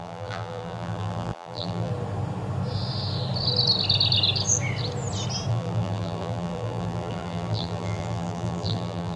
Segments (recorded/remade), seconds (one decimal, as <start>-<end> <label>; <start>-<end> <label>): 0.0-1.9 remade; 1.9-5.5 recorded; 5.5-9.2 remade